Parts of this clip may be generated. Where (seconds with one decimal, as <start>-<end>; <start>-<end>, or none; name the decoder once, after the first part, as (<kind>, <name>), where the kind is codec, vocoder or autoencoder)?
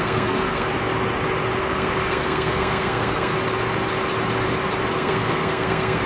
0.0-0.7 (codec, SNAC); 1.6-3.3; 4.9-6.1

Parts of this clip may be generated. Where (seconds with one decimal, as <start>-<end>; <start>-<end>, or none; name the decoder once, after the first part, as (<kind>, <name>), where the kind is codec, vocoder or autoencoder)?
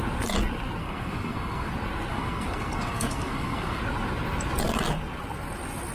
0.8-1.7 (codec, SNAC); 2.1-3.8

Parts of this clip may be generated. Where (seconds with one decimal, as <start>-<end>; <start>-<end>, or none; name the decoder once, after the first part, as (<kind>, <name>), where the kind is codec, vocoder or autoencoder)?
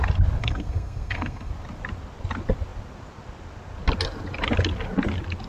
0.4-1.5 (codec, SNAC)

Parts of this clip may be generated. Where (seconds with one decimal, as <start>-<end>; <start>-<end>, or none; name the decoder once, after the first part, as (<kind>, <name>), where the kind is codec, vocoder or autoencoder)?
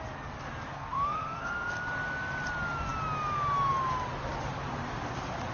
0.7-1.7 (codec, SNAC)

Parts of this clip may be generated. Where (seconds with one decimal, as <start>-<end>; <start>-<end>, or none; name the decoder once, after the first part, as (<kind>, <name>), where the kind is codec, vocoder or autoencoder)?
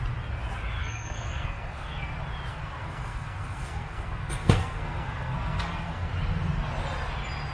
0.8-2.1 (codec, SNAC); 2.5-6.1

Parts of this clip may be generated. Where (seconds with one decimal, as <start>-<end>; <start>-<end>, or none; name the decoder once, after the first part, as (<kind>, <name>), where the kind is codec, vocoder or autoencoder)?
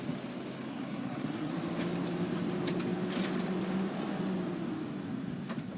0.7-1.5 (codec, SNAC)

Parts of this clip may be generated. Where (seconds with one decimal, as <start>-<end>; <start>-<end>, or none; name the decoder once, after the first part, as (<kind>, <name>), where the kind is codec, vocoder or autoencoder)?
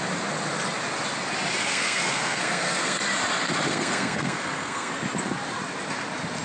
1.6-3.0 (codec, SNAC); 3.7-4.9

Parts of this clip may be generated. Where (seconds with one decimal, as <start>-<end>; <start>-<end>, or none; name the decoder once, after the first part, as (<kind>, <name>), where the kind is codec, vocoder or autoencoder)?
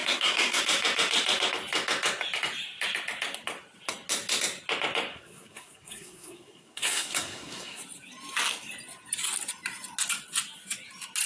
0.0-0.6 (codec, SNAC); 5.1-7.8